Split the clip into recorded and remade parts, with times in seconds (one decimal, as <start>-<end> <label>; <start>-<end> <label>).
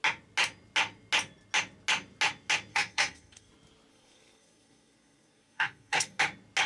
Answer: 0.0-2.7 recorded; 2.7-3.5 remade; 3.5-3.9 recorded; 3.9-6.2 remade; 6.2-6.7 recorded